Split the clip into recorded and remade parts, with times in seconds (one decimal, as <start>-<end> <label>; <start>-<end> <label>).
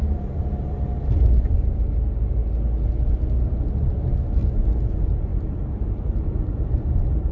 0.0-1.6 remade; 1.6-5.3 recorded; 5.3-6.0 remade; 6.0-7.3 recorded